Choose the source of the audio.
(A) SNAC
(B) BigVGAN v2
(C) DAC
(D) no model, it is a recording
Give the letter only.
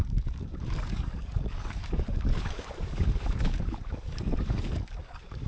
C